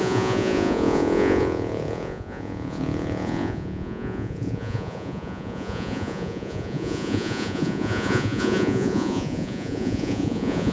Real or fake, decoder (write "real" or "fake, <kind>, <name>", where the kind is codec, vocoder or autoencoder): fake, vocoder, Vocos